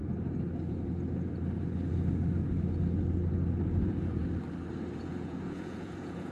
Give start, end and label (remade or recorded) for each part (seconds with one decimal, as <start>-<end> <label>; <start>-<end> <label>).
0.0-3.8 recorded; 3.8-4.2 remade; 4.2-5.0 recorded; 5.0-6.3 remade

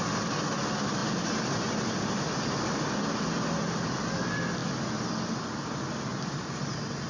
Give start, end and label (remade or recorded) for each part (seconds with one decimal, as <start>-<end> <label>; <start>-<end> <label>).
0.0-7.1 recorded

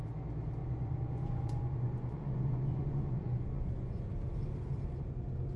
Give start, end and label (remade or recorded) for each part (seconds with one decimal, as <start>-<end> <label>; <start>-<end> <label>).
0.0-0.6 recorded; 0.6-4.0 remade; 4.0-5.6 recorded